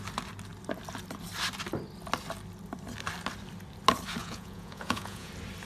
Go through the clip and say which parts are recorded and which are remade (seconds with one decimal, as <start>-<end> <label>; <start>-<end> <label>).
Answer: 0.0-4.2 recorded; 4.2-5.3 remade; 5.3-5.7 recorded